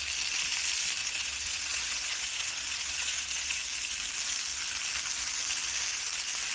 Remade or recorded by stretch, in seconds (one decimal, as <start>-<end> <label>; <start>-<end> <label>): 0.0-1.0 recorded; 1.0-3.6 remade; 3.6-6.5 recorded